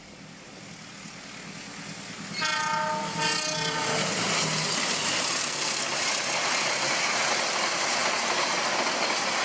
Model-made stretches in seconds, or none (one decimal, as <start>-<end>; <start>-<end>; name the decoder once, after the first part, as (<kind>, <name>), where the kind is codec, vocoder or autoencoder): 5.4-5.9 (codec, SNAC)